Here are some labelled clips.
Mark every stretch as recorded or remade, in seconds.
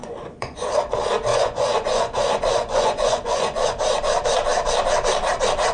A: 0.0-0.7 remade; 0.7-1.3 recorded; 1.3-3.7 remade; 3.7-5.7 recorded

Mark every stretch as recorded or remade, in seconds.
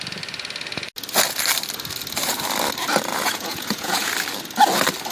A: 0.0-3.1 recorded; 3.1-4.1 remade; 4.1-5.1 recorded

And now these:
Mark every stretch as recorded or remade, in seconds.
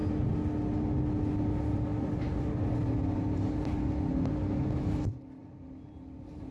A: 0.0-6.5 recorded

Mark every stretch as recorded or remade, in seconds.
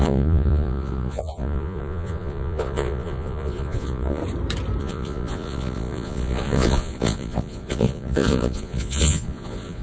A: 0.0-4.2 remade; 4.2-4.8 recorded; 4.8-9.8 remade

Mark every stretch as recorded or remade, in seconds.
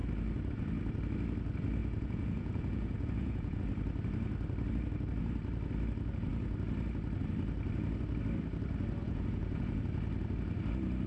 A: 0.0-1.8 recorded; 1.8-3.6 remade; 3.6-9.0 recorded; 9.0-9.8 remade; 9.8-11.1 recorded